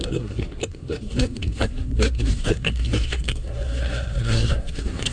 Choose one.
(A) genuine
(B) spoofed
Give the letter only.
B